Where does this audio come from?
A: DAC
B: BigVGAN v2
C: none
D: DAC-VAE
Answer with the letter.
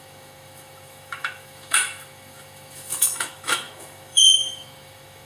D